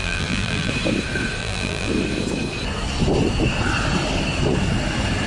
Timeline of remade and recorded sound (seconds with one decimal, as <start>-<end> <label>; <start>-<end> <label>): 0.0-0.7 remade; 0.7-1.4 recorded; 1.4-1.9 remade; 1.9-5.3 recorded